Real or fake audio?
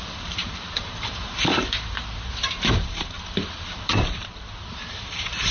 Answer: fake